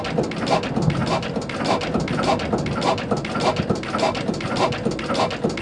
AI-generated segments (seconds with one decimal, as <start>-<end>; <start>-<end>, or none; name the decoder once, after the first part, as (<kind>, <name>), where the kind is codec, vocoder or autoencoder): none

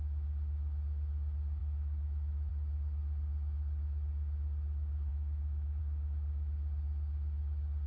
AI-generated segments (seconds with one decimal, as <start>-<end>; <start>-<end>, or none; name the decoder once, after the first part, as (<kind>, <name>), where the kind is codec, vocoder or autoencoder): 1.6-2.5 (autoencoder, DAC-VAE); 5.1-5.8

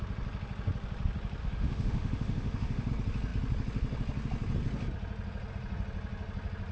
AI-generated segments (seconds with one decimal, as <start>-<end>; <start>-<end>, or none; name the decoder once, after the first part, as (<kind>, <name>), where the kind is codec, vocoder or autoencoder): 1.4-2.9 (autoencoder, DAC-VAE)

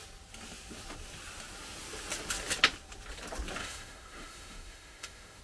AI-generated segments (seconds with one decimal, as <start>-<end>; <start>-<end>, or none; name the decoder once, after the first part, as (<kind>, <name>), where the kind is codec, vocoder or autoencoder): 3.6-5.4 (autoencoder, DAC-VAE)

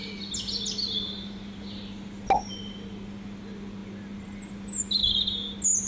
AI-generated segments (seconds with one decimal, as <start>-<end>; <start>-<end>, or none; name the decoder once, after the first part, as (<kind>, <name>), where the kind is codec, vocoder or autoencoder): none

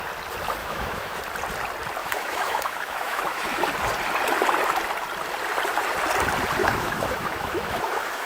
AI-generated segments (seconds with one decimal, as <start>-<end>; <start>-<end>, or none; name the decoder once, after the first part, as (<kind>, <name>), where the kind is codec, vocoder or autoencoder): 0.6-1.2 (autoencoder, DAC-VAE); 2.0-3.6; 6.6-8.3

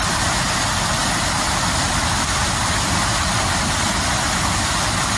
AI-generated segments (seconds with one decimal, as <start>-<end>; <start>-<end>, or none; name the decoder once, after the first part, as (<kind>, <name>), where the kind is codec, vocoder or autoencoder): none